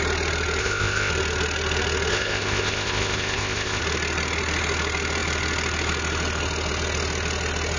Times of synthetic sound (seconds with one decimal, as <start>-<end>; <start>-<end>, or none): 0.6-1.1; 2.1-3.8